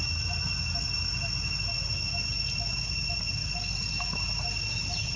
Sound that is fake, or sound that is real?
real